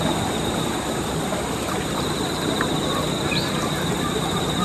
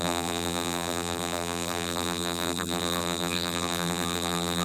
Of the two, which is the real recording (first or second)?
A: first